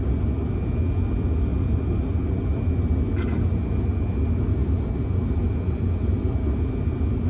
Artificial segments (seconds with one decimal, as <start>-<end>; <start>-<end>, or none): none